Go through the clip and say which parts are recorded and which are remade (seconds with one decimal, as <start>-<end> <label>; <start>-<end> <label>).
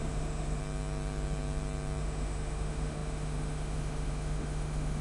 0.0-0.6 remade; 0.6-2.0 recorded; 2.0-5.0 remade